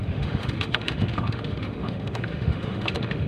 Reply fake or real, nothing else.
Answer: fake